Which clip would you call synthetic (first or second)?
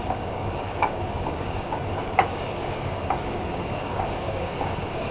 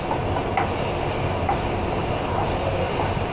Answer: first